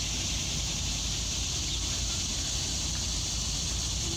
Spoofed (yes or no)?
no